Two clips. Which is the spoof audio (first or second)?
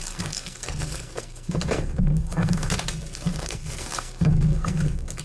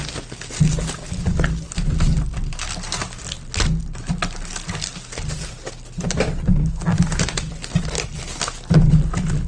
first